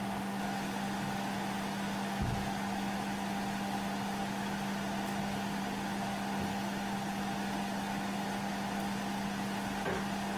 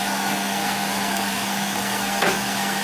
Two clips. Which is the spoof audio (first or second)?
second